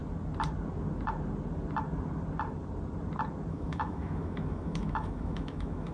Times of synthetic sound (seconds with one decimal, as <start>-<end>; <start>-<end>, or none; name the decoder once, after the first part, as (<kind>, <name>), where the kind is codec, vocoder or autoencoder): 3.5-5.9 (autoencoder, DAC-VAE)

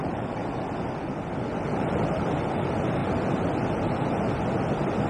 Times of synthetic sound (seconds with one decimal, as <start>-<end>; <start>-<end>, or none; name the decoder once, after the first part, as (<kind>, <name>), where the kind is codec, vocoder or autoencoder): 0.0-0.4 (vocoder, BigVGAN v2); 1.0-3.0

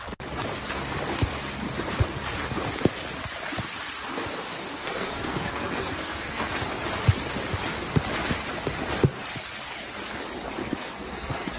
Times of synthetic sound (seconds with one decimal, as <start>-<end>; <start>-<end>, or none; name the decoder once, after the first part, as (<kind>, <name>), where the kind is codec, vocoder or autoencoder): 4.5-6.6 (codec, SNAC); 10.6-11.6

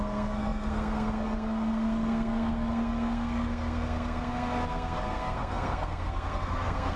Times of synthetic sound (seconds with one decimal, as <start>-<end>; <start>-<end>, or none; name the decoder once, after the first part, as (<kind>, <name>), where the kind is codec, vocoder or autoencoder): 0.0-7.0 (codec, SNAC)

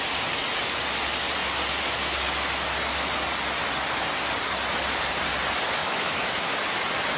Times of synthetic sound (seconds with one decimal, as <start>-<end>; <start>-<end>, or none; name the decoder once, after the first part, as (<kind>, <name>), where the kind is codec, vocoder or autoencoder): 5.8-6.8 (autoencoder, DAC-VAE)

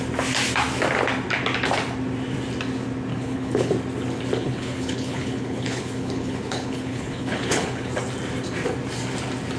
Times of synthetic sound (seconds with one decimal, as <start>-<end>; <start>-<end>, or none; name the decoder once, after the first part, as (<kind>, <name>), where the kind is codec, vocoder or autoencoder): 3.1-3.7 (codec, HILCodec); 4.4-7.9